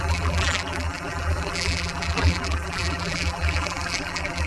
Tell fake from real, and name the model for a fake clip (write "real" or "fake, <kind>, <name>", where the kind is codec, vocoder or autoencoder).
fake, vocoder, BigVGAN v2